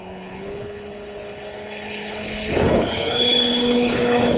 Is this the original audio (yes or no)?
no